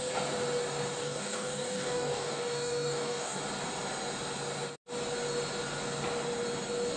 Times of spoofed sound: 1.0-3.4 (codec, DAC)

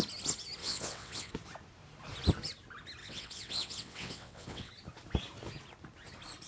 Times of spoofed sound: 0.6-1.3 (vocoder, WaveNeXt); 3.0-4.7

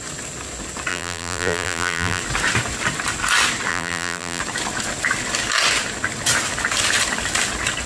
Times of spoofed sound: 0.9-2.2 (vocoder, BigVGAN v2); 3.7-4.4

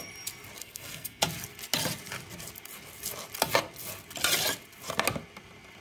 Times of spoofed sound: 0.6-1.2 (codec, SNAC)

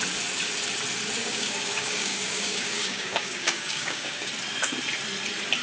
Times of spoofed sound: 1.2-4.3 (codec, DAC)

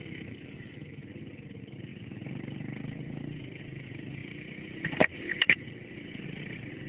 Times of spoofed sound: 0.0-1.0 (autoencoder, DAC-VAE)

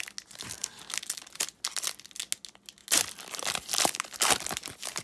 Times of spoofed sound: none

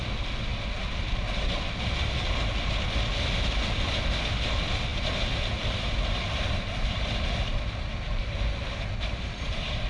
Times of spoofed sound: none